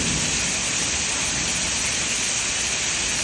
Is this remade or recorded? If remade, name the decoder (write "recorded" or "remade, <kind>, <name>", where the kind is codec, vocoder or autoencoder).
recorded